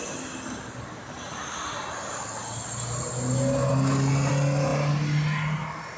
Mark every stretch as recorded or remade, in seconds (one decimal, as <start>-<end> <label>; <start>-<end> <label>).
0.0-6.0 recorded